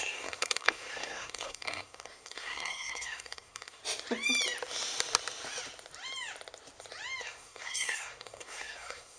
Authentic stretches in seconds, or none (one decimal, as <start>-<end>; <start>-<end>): 3.8-7.2